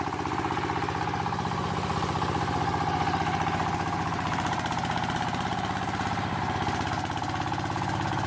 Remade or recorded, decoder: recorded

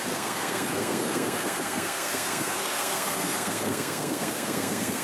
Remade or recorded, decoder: remade, codec, SNAC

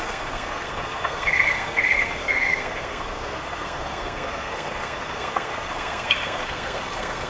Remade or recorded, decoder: remade, codec, SNAC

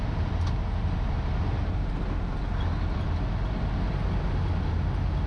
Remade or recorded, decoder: recorded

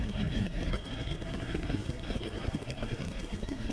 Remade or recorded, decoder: remade, codec, SNAC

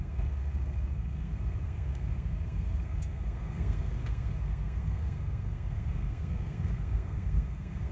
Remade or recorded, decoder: remade, codec, SNAC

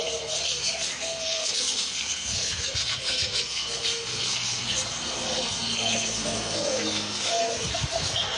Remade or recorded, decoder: remade, codec, SNAC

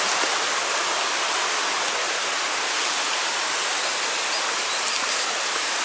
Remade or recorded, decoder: recorded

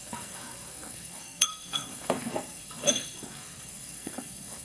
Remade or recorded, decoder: remade, codec, SNAC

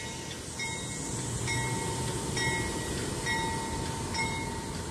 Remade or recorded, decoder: recorded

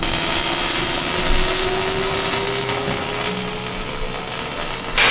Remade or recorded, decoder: recorded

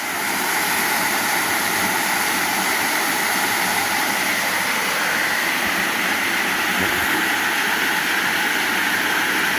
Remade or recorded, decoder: recorded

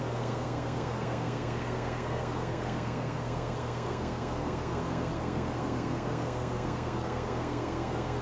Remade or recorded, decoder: remade, codec, SNAC